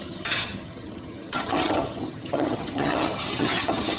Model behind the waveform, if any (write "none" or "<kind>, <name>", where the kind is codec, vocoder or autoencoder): vocoder, HiFi-GAN